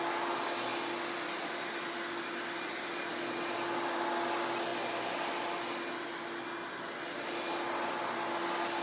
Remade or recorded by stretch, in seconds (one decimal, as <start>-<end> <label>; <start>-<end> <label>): 0.0-8.8 recorded